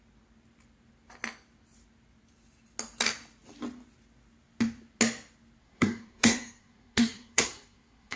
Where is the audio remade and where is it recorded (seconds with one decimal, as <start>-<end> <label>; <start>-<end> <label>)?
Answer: 0.0-5.6 recorded; 5.6-8.2 remade